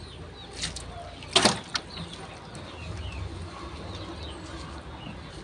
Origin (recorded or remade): recorded